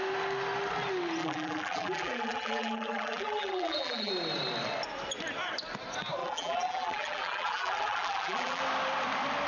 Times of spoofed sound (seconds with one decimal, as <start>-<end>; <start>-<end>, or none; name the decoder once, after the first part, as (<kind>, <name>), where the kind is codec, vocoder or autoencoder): 1.2-4.1 (vocoder, BigVGAN v2); 6.2-8.6